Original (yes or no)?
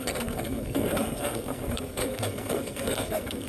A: no